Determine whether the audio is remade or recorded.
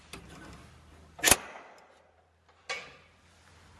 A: recorded